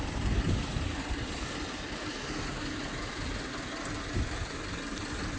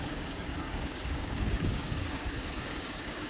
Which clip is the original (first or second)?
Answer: first